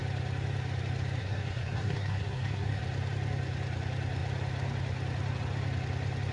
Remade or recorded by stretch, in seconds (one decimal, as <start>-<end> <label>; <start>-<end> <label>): 0.0-1.2 recorded; 1.2-2.8 remade; 2.8-6.3 recorded